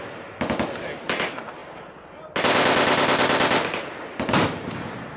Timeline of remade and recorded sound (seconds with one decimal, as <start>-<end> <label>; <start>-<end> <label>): 0.0-5.2 recorded

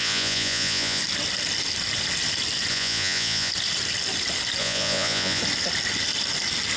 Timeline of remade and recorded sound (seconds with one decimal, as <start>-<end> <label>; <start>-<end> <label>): 0.0-1.0 remade; 1.0-2.7 recorded; 2.7-3.5 remade; 3.5-4.6 recorded; 4.6-5.4 remade; 5.4-6.8 recorded

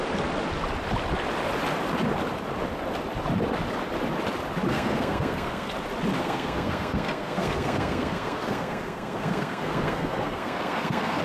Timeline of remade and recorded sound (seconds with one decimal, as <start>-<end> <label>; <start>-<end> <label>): 0.0-4.7 recorded; 4.7-5.7 remade; 5.7-6.2 recorded; 6.2-11.2 remade

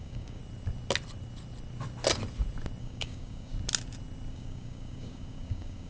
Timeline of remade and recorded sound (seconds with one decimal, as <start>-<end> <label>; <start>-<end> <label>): 0.0-0.4 remade; 0.4-2.8 recorded; 2.8-3.5 remade; 3.5-4.3 recorded; 4.3-5.9 remade